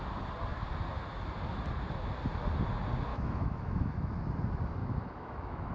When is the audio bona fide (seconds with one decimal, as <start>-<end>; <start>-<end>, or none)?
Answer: 0.0-3.1; 4.1-4.8

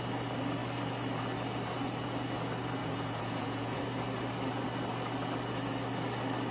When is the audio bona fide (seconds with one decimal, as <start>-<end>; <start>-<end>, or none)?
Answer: 0.0-2.8; 3.8-6.5